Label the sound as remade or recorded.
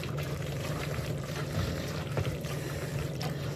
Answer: remade